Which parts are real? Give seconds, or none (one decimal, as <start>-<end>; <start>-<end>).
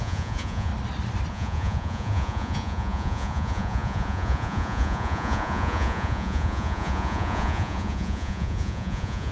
0.7-1.3